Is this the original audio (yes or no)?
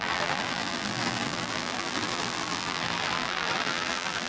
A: no